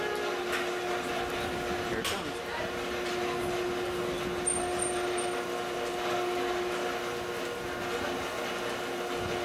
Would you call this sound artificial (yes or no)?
no